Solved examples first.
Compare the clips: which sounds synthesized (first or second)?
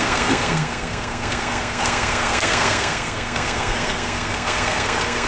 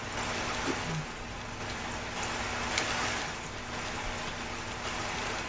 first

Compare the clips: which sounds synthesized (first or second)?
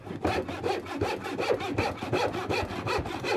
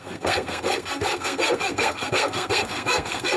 second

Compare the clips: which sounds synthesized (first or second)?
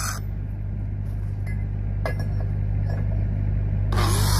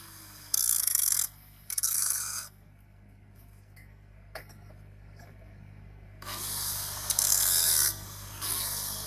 second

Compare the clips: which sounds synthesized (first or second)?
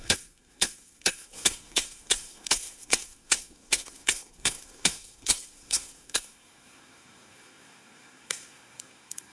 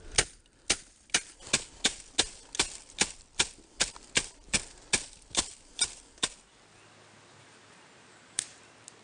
first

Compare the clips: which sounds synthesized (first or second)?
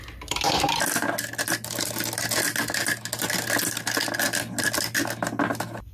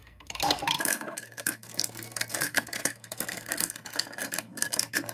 second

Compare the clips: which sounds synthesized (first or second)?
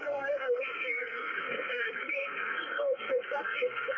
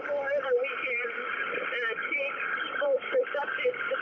first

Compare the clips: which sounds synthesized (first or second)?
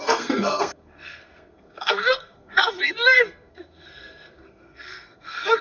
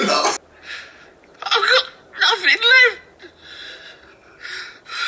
first